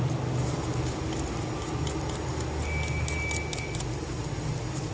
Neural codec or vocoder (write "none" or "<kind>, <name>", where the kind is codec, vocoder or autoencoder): none